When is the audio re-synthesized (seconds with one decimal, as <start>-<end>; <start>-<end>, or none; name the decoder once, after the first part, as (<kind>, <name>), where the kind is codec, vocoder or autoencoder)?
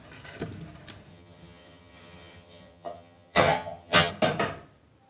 1.1-4.1 (vocoder, HiFi-GAN)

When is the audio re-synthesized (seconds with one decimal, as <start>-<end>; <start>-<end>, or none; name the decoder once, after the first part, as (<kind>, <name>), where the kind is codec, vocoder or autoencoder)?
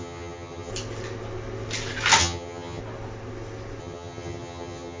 0.0-0.7 (vocoder, HiFi-GAN); 2.2-2.8; 3.8-5.0